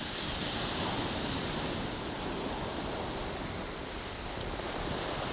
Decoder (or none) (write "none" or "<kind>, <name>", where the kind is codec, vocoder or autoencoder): none